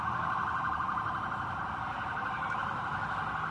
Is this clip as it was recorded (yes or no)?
yes